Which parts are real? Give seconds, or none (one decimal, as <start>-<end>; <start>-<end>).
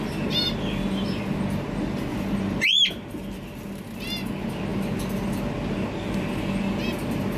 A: 0.0-2.1; 3.8-7.4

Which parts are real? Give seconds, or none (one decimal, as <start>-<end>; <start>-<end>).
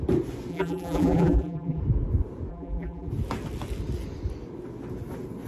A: 0.0-0.5; 1.8-2.5; 3.1-5.5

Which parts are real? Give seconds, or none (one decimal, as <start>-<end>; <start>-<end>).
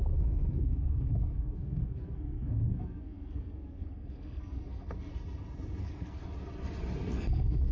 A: 5.1-5.8; 6.2-7.1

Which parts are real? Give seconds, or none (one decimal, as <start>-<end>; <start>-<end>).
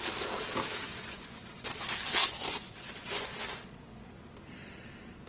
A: 0.0-0.9; 1.7-2.2; 3.3-5.3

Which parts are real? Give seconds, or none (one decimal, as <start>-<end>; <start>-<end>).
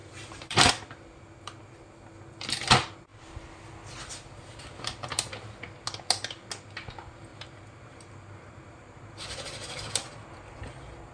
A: 0.7-7.3; 9.9-11.1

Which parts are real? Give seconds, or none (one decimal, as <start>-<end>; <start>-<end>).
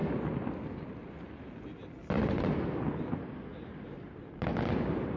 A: 0.0-3.5; 4.2-5.2